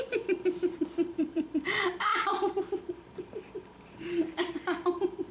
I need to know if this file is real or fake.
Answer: fake